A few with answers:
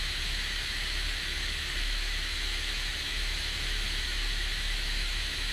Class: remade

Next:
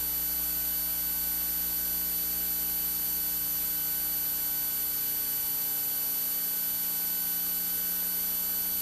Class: recorded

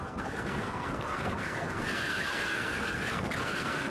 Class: remade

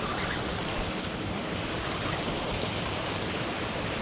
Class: recorded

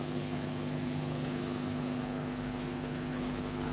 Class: remade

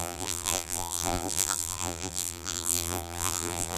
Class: remade